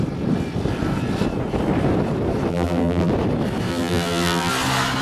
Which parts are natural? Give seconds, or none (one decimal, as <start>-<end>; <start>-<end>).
0.0-2.5; 3.1-3.7; 4.5-5.0